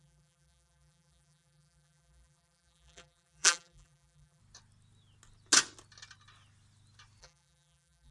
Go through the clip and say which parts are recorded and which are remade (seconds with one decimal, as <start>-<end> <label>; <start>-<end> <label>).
0.0-4.4 remade; 4.4-7.2 recorded; 7.2-8.1 remade